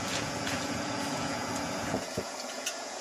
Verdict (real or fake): fake